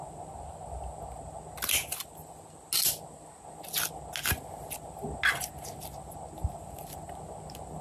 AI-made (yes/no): no